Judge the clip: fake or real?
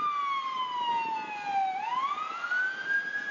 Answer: real